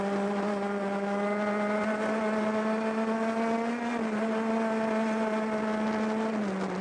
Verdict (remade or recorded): recorded